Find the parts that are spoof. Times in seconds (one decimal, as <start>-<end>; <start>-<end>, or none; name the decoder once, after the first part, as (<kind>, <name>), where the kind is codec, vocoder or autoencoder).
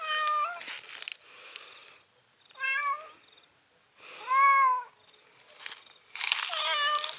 none